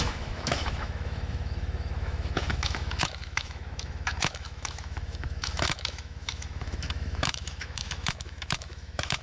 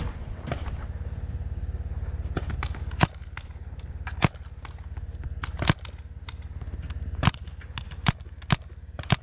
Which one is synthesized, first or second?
first